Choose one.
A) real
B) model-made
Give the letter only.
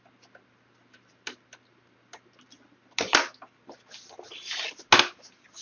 A